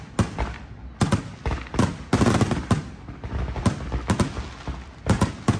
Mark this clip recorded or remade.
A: recorded